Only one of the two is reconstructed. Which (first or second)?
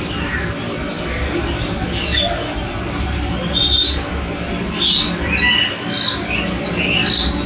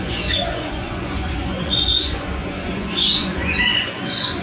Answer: second